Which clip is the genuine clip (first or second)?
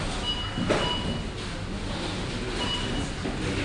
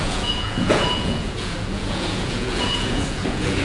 first